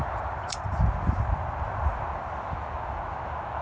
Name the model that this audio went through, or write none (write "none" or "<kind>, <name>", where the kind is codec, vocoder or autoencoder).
none